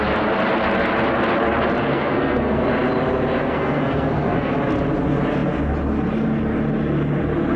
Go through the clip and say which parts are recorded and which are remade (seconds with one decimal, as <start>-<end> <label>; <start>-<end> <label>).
0.0-1.9 recorded; 1.9-2.6 remade; 2.6-3.4 recorded; 3.4-4.5 remade; 4.5-7.6 recorded